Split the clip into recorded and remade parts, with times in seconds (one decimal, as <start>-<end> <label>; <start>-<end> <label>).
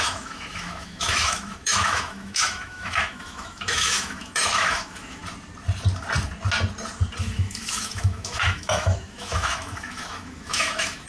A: 0.0-5.2 remade; 5.2-7.2 recorded; 7.2-11.1 remade